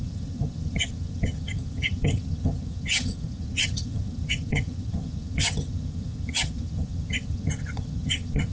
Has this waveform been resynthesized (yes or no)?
yes